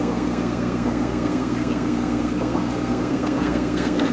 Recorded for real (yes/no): no